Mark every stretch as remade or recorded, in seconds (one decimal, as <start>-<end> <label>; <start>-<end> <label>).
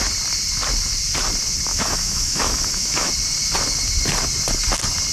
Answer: 0.0-1.7 recorded; 1.7-3.1 remade; 3.1-5.1 recorded